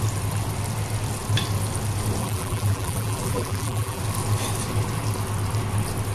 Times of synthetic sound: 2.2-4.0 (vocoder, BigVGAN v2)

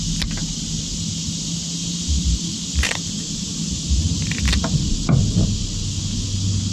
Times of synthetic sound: 1.8-2.8 (vocoder, BigVGAN v2); 3.5-4.6